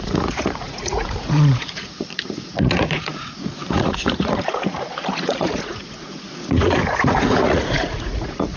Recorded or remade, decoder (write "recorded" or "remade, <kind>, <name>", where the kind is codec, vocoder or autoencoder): remade, vocoder, Vocos